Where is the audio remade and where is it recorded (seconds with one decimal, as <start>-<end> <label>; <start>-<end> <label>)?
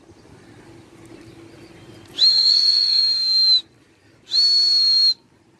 0.0-2.3 recorded; 2.3-3.0 remade; 3.0-5.6 recorded